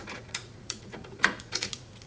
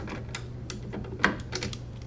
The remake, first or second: first